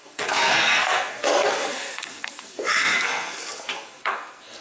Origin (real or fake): fake